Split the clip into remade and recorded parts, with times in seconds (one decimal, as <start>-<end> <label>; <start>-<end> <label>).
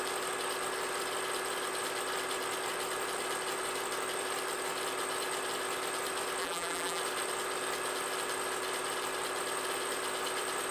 0.0-6.4 recorded; 6.4-7.0 remade; 7.0-10.7 recorded